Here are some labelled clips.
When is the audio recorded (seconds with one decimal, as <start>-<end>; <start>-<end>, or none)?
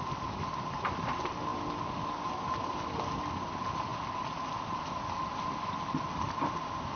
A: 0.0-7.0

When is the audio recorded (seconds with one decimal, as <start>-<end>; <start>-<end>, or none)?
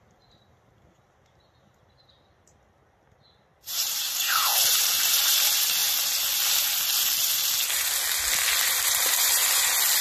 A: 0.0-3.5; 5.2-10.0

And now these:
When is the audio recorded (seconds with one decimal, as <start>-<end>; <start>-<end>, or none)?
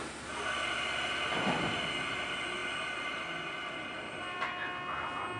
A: 0.0-5.4